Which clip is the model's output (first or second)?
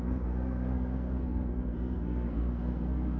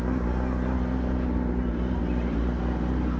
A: first